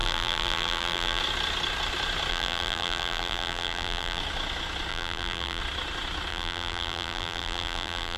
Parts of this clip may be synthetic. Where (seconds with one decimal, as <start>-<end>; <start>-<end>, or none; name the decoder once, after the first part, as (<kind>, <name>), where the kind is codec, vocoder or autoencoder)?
0.0-1.2 (vocoder, BigVGAN v2); 2.3-4.2; 4.9-5.6; 6.3-8.2